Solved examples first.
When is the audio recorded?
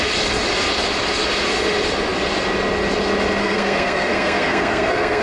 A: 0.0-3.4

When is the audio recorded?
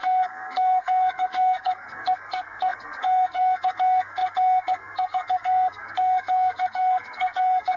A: none